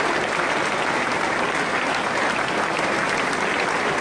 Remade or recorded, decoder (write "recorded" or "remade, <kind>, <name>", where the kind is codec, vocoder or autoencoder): recorded